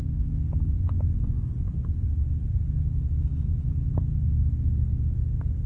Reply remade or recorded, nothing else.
recorded